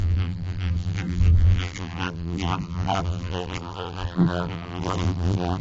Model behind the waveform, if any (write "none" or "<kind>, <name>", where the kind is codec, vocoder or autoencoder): vocoder, BigVGAN v2